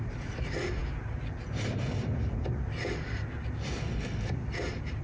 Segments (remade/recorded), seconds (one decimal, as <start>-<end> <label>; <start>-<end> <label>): 0.0-5.0 recorded